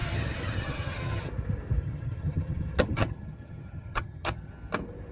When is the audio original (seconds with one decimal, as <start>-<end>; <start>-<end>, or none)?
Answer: 1.3-1.8; 4.5-5.1